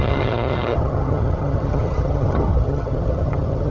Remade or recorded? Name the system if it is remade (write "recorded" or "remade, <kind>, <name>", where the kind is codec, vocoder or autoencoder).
remade, vocoder, HiFi-GAN